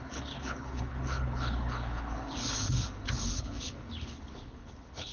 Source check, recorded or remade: remade